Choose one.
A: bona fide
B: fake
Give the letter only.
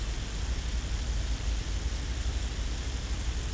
A